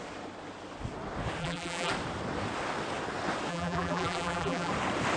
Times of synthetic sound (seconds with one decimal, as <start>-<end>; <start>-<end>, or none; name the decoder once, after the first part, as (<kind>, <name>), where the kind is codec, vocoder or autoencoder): 1.4-1.9 (vocoder, BigVGAN v2); 3.5-4.7